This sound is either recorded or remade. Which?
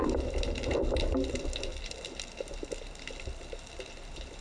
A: recorded